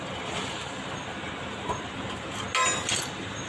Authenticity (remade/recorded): recorded